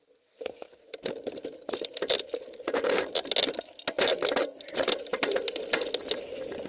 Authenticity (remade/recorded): recorded